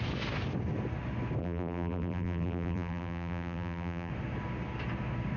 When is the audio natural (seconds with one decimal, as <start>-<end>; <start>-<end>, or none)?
0.0-1.4; 4.1-5.4